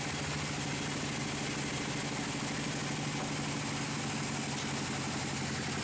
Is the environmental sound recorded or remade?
recorded